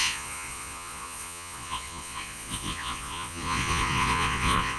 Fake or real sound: fake